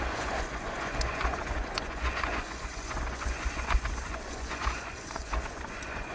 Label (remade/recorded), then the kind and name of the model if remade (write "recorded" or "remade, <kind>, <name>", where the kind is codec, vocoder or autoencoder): remade, vocoder, Vocos